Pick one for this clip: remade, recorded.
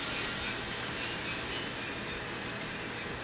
recorded